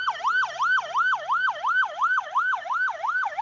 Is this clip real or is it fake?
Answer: real